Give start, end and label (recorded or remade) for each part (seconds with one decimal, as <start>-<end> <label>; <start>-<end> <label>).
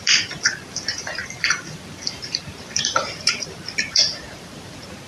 0.0-5.1 remade